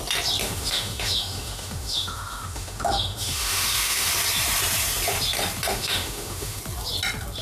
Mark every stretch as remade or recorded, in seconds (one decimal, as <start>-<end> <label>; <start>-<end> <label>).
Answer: 0.0-0.4 recorded; 0.4-4.1 remade; 4.1-5.7 recorded; 5.7-6.6 remade; 6.6-7.4 recorded